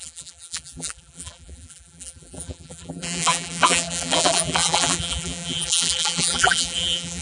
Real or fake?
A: fake